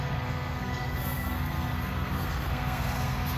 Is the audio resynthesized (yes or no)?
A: yes